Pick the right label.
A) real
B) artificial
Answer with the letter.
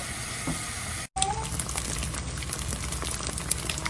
A